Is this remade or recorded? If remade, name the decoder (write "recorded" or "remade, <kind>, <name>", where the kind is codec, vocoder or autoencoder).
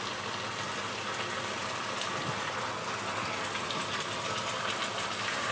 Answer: recorded